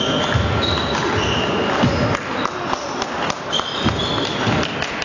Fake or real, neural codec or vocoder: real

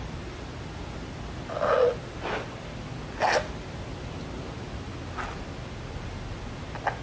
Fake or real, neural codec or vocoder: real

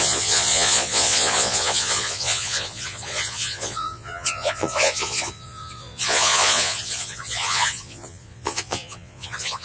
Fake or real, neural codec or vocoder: fake, vocoder, Vocos